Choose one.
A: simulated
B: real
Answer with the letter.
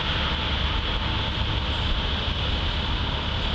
B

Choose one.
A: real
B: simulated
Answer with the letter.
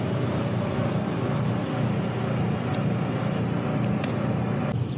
A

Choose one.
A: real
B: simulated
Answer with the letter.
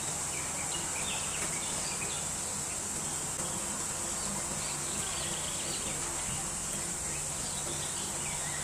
A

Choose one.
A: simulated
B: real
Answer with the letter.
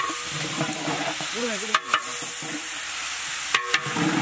A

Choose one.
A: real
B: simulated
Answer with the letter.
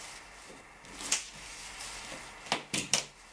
A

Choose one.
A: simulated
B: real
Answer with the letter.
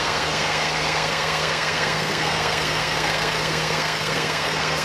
A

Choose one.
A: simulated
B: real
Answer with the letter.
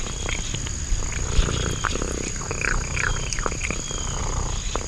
B